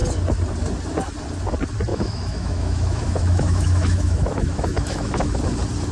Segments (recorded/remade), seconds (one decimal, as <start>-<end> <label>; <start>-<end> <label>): 0.0-1.9 recorded; 1.9-5.4 remade; 5.4-5.9 recorded